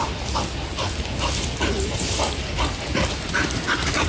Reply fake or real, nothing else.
fake